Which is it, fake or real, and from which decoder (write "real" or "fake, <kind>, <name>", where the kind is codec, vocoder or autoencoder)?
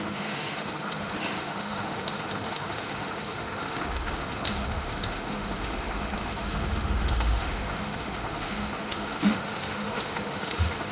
fake, autoencoder, DAC-VAE